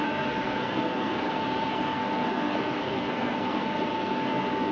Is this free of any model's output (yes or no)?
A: no